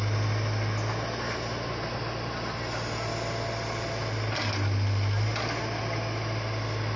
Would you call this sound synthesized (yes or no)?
no